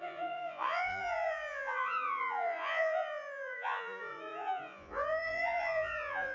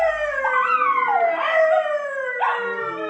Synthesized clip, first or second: first